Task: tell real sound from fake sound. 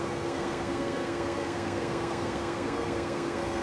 fake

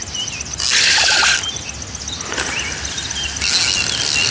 real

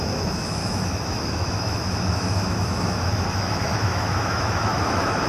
fake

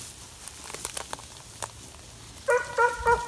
real